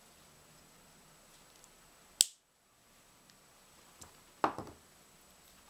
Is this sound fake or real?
real